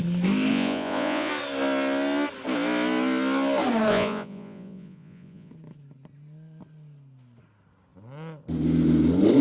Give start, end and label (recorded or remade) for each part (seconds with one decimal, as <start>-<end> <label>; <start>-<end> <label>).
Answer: 0.0-0.5 recorded; 0.5-1.3 remade; 1.3-3.9 recorded; 3.9-5.5 remade; 5.5-9.4 recorded